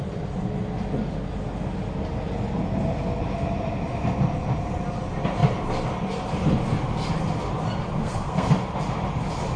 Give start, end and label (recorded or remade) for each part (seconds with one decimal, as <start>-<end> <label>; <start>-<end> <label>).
0.0-8.0 recorded; 8.0-8.5 remade; 8.5-9.6 recorded